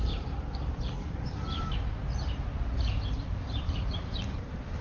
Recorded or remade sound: remade